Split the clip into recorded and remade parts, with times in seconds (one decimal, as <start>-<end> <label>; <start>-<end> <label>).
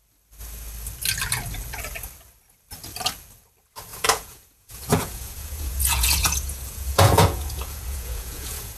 0.0-3.9 recorded; 3.9-8.8 remade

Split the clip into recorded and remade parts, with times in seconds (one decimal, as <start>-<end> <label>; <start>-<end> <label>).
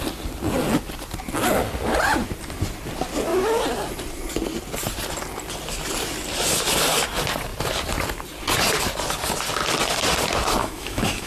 0.0-10.6 recorded; 10.6-11.3 remade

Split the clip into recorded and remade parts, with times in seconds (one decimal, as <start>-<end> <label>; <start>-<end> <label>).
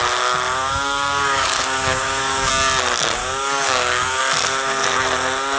0.0-0.6 recorded; 0.6-2.5 remade; 2.5-3.2 recorded; 3.2-4.2 remade; 4.2-5.6 recorded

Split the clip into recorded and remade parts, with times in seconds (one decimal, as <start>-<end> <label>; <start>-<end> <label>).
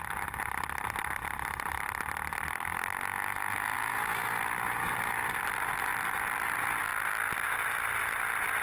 0.0-8.6 recorded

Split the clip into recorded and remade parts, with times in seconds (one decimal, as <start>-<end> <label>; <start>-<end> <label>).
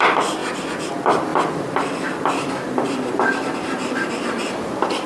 0.0-5.1 remade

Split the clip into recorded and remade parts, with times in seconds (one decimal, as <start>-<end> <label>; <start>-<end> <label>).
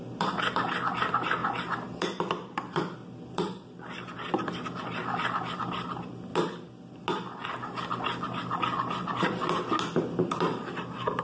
0.0-6.3 remade; 6.3-10.4 recorded; 10.4-11.2 remade